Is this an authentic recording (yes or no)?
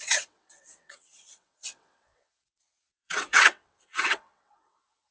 no